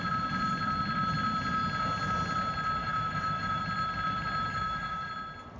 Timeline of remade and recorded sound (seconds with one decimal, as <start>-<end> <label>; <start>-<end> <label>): 0.0-2.8 recorded; 2.8-3.6 remade; 3.6-4.5 recorded; 4.5-5.1 remade; 5.1-5.6 recorded